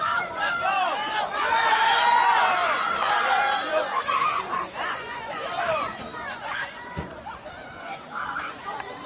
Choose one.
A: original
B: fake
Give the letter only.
B